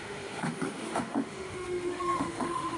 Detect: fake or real fake